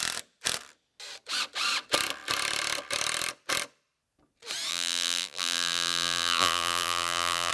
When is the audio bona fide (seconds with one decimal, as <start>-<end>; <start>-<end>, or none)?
0.0-4.7